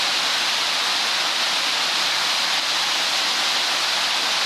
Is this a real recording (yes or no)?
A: yes